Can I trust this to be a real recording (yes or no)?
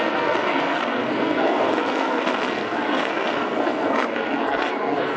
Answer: no